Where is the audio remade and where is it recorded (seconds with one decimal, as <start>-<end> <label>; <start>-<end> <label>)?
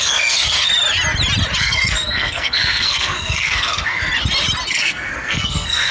0.0-0.7 remade; 0.7-1.6 recorded; 1.6-4.1 remade; 4.1-4.7 recorded; 4.7-5.9 remade